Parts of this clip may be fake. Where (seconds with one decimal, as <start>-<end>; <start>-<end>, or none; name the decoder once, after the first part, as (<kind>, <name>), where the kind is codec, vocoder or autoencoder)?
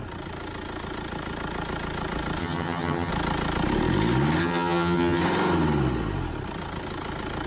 2.4-3.1 (vocoder, HiFi-GAN); 4.4-5.2